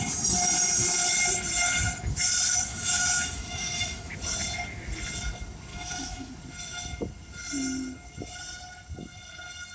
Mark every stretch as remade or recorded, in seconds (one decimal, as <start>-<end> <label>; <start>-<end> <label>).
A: 0.0-2.7 recorded; 2.7-4.1 remade; 4.1-5.7 recorded; 5.7-6.3 remade; 6.3-9.7 recorded